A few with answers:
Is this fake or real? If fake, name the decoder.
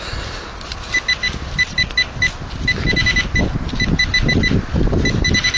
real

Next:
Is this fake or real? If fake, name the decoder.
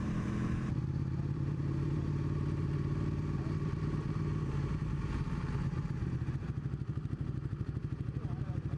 fake, vocoder, BigVGAN v2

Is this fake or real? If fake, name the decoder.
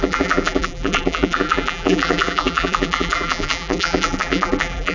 fake, vocoder, BigVGAN v2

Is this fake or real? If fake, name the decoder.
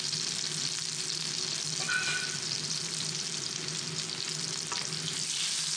real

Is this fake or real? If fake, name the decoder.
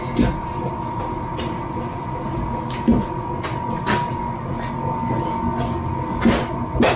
real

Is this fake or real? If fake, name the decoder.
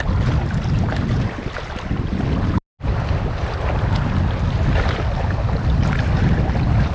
real